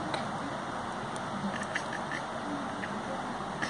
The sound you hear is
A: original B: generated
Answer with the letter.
A